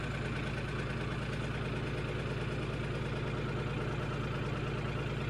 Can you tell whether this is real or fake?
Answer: real